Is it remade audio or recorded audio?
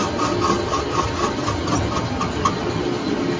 recorded